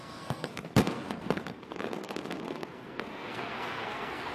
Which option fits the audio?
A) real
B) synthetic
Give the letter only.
B